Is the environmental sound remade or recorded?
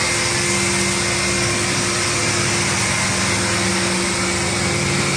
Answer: recorded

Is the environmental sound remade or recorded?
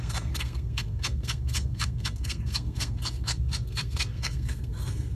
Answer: remade